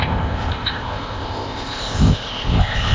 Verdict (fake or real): fake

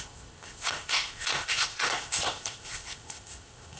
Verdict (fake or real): fake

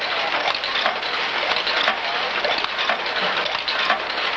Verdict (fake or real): real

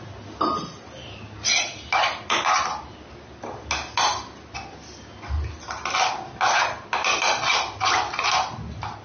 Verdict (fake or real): real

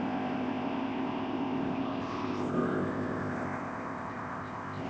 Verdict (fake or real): fake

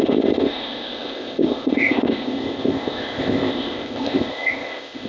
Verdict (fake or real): fake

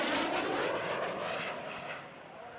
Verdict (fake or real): real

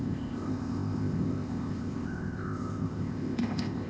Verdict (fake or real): fake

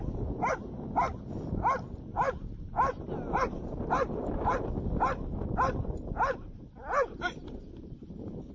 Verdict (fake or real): real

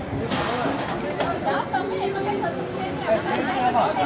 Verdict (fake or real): real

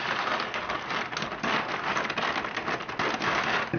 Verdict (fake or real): real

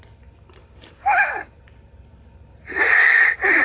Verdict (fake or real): real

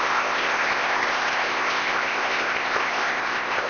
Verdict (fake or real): fake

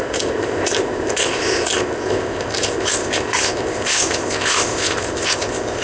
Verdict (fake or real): fake